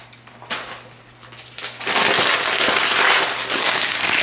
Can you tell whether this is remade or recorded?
recorded